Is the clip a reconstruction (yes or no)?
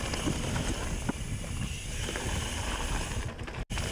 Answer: no